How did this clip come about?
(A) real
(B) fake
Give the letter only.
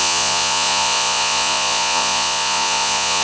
B